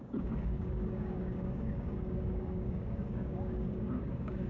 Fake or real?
fake